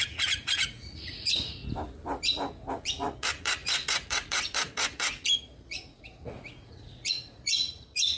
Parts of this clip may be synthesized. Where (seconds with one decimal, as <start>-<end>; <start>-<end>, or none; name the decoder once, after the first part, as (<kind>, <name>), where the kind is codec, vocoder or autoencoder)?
0.0-1.6 (vocoder, Vocos); 2.7-8.2